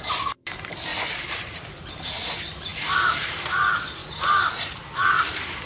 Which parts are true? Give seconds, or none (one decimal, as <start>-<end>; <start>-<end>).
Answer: 0.9-1.9; 4.0-5.1